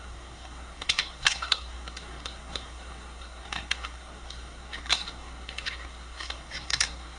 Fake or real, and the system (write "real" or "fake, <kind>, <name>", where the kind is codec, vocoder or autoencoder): fake, codec, SNAC